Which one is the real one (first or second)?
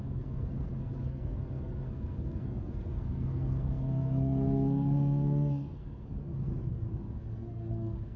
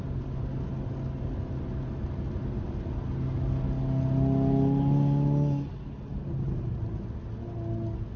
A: second